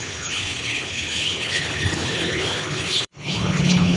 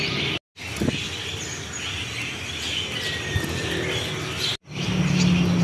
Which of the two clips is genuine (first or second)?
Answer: second